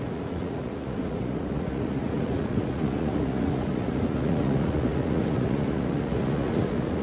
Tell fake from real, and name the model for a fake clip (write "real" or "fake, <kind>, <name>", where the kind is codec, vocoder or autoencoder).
fake, vocoder, Vocos